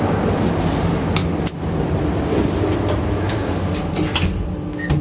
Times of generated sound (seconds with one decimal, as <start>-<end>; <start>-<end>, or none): none